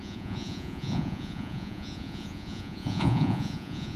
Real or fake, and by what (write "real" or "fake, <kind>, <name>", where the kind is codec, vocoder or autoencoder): fake, vocoder, Vocos